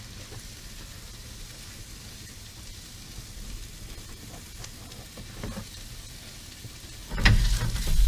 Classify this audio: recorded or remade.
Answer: recorded